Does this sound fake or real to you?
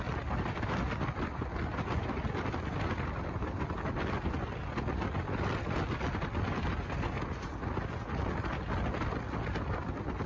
real